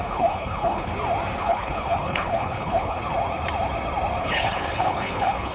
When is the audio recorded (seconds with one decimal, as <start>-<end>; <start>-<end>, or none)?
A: 0.9-1.4; 3.0-4.2